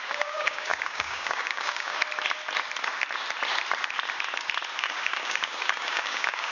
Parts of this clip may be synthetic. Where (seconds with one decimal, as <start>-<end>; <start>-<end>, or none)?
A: 0.0-2.0; 4.7-6.5